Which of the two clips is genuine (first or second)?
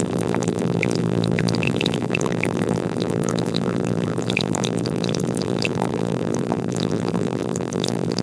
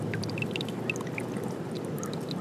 second